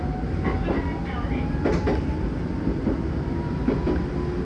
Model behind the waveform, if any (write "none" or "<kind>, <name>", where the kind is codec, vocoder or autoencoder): none